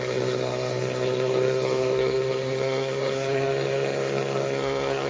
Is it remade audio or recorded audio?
remade